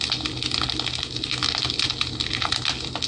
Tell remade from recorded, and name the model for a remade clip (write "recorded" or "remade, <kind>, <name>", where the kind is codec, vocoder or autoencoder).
recorded